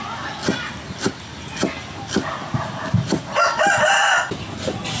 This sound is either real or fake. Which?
real